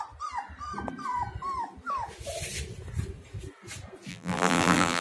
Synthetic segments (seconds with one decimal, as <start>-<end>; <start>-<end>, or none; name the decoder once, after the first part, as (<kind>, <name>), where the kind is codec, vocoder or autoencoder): 4.1-5.0 (vocoder, BigVGAN v2)